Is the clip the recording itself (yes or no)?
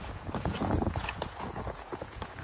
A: no